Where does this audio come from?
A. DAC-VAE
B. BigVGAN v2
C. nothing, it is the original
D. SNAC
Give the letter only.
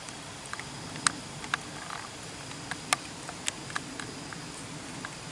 C